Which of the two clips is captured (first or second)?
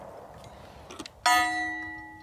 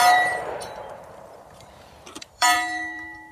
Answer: first